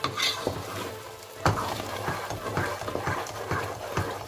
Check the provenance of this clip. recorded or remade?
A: recorded